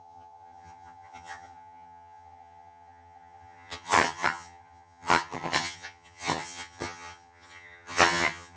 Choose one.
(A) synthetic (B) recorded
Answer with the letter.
A